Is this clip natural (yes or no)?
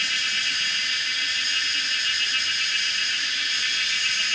yes